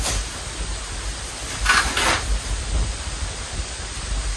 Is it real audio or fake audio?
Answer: real